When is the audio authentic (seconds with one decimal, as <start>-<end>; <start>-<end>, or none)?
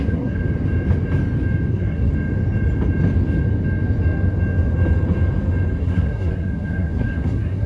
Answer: 0.4-1.7; 2.1-5.8